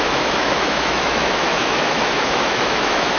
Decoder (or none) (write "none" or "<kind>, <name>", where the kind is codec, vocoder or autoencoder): autoencoder, DAC-VAE